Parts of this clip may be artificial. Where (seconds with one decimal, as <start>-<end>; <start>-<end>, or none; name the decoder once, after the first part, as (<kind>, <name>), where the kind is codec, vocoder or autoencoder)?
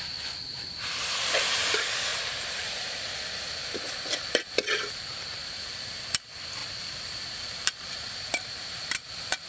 2.1-3.0 (vocoder, BigVGAN v2); 5.4-6.0; 6.6-9.1